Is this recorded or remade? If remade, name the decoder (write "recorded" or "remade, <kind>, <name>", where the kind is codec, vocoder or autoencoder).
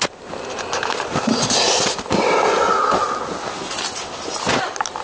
recorded